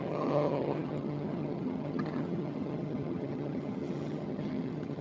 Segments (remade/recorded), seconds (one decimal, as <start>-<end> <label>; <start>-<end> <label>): 0.0-5.0 remade